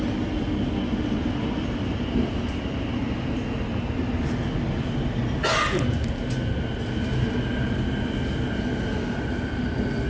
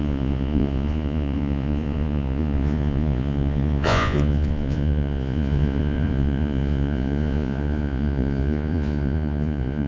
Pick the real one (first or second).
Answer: first